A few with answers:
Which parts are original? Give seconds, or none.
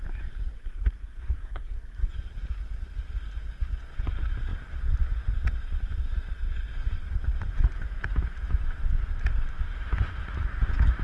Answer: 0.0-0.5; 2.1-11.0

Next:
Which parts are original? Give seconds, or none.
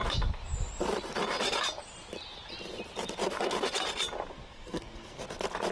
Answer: 0.0-4.3; 5.2-5.7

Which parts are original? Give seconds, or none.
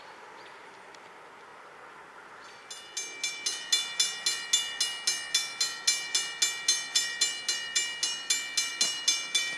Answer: 0.0-9.6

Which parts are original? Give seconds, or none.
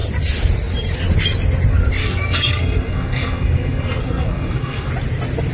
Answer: 0.0-2.0; 4.9-5.5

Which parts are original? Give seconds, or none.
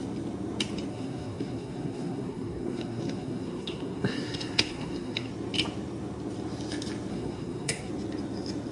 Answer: 0.0-0.9; 5.3-7.1; 7.9-8.7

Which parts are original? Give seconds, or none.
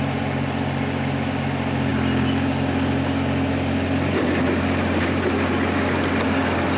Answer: 0.0-6.8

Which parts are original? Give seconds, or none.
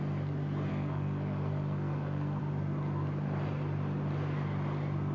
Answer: 0.0-0.7; 2.4-5.1